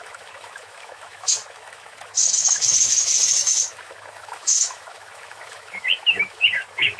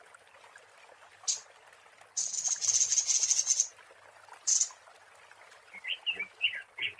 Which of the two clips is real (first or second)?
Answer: second